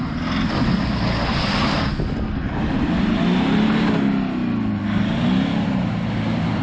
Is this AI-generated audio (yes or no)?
no